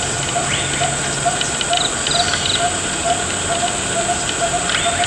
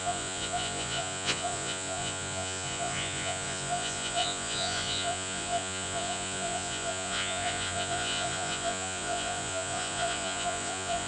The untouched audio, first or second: first